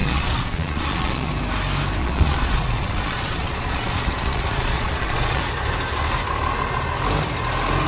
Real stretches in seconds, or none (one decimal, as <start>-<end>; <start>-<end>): 1.3-2.0; 5.4-7.9

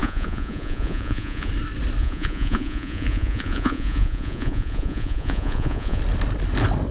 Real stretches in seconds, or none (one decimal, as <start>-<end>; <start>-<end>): 1.5-2.0; 6.0-6.9

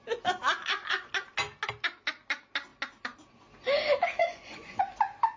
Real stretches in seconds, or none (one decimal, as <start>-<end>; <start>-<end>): 0.0-0.4; 1.1-4.2; 4.8-5.4